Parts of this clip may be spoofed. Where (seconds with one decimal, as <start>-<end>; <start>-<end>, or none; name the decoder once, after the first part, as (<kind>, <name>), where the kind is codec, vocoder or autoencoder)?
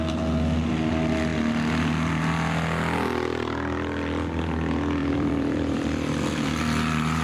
5.0-6.5 (vocoder, BigVGAN v2)